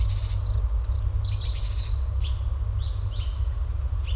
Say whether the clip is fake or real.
real